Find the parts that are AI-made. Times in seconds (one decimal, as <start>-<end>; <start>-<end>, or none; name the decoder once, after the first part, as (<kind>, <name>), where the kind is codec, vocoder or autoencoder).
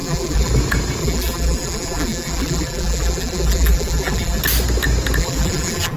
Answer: 0.0-0.5 (vocoder, BigVGAN v2); 1.0-4.4; 5.2-6.0